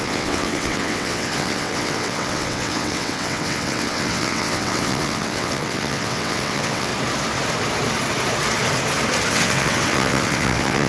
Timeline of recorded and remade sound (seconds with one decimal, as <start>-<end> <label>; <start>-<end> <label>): 0.0-6.9 remade; 6.9-9.3 recorded; 9.3-10.9 remade